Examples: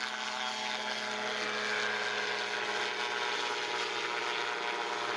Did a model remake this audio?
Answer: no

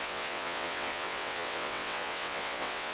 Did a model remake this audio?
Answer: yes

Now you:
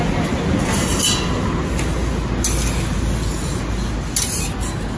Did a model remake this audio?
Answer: no